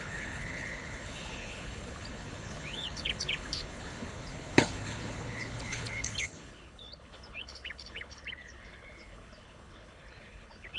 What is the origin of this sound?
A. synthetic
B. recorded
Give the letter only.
A